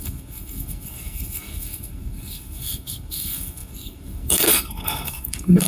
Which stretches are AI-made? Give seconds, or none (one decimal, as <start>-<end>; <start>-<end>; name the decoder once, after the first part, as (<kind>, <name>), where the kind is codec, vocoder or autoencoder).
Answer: 0.0-5.7 (codec, SNAC)